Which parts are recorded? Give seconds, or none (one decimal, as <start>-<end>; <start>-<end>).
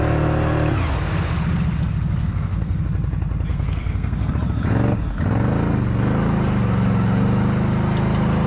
0.0-2.2; 2.8-3.5; 4.3-8.5